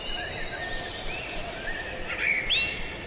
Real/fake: real